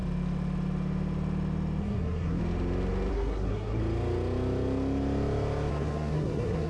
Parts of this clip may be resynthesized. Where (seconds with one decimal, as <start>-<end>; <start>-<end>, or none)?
1.8-2.4; 3.1-3.8; 5.7-6.7